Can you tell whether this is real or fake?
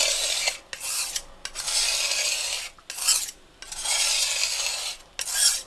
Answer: real